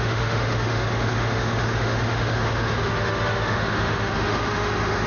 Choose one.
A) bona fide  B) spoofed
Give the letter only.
B